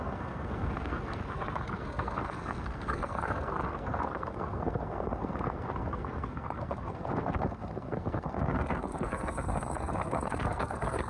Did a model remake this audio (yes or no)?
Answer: yes